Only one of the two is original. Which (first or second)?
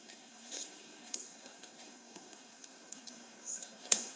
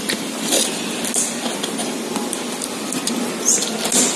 second